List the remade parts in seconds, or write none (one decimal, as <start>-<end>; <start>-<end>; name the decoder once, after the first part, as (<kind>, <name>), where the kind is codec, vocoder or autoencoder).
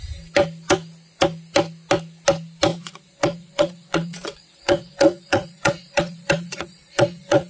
2.7-7.5 (vocoder, Vocos)